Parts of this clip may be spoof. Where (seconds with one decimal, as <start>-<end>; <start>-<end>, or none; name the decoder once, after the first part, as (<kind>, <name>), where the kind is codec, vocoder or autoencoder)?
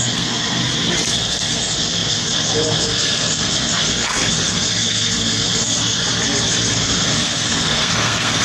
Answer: 0.0-0.6 (codec, SNAC); 1.1-6.0; 6.7-8.4